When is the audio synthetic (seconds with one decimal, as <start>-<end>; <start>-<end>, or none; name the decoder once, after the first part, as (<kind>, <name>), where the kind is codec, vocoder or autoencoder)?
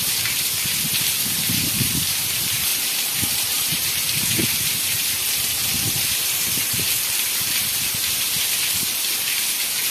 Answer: 2.7-4.8 (vocoder, BigVGAN v2); 5.6-6.9; 7.6-8.4